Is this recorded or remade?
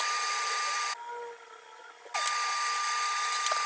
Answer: recorded